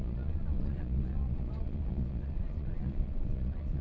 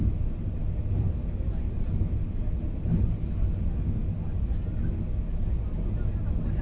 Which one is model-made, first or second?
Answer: first